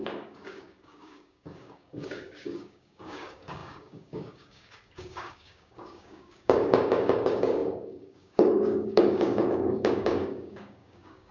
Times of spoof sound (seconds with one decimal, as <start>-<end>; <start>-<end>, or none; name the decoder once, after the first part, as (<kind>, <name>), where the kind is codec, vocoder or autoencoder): 0.0-11.3 (codec, DAC)